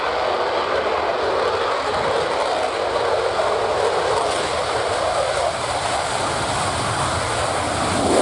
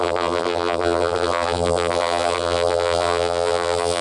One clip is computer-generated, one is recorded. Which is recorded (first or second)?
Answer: first